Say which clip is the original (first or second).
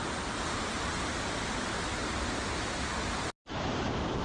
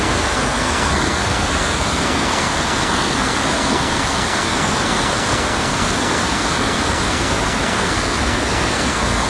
first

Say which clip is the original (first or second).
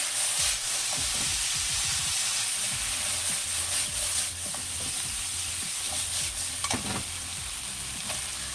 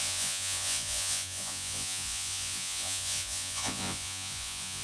first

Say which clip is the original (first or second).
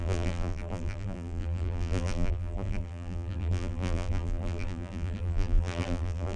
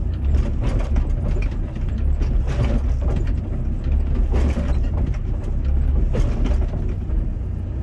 second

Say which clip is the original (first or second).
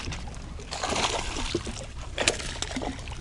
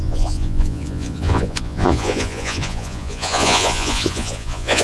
first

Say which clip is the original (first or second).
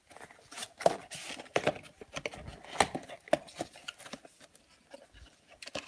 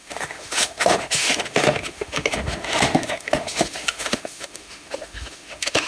first